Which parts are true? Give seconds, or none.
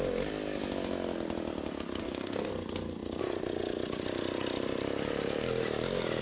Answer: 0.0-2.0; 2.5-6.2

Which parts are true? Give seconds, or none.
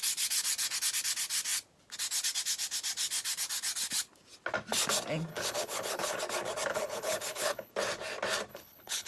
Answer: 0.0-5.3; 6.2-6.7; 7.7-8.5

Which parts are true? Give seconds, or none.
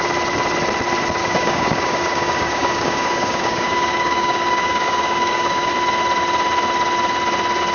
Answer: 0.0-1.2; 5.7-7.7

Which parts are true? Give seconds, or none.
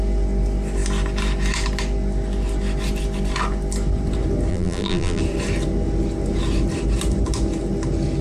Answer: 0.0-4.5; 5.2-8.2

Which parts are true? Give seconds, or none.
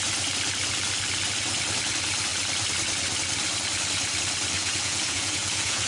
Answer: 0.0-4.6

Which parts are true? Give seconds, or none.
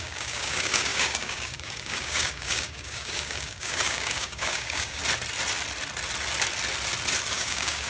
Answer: 5.0-7.3